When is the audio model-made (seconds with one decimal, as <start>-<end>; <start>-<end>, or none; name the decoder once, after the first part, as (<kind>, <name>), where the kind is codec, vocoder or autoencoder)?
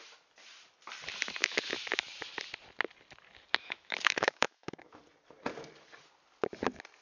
1.4-2.0 (autoencoder, DAC-VAE); 3.6-5.0